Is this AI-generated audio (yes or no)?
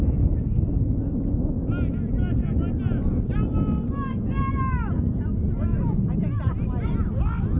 no